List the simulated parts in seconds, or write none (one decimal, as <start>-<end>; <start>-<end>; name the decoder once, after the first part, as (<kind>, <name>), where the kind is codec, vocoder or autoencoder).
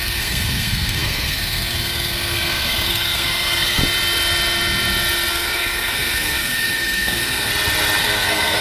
0.0-3.8 (codec, SNAC); 5.3-7.5; 8.0-8.6